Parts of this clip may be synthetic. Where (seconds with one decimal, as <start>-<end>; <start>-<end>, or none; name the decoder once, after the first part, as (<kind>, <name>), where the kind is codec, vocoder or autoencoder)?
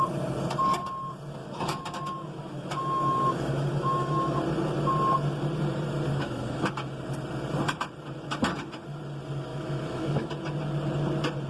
1.4-4.4 (autoencoder, DAC-VAE); 6.1-6.7; 9.5-10.3